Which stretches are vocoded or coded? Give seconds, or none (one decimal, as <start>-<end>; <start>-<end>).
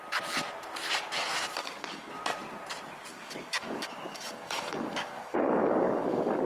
1.6-2.1; 3.1-6.4